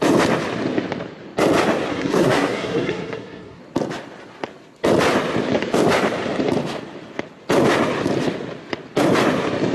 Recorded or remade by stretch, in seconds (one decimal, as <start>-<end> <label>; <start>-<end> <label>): 0.0-1.9 recorded; 1.9-3.6 remade; 3.6-9.7 recorded